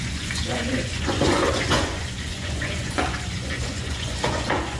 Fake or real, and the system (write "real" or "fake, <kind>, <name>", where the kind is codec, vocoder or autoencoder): fake, vocoder, Vocos